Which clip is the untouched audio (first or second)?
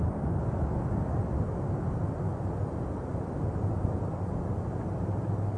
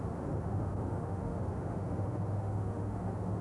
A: first